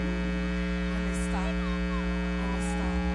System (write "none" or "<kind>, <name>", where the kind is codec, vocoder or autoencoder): none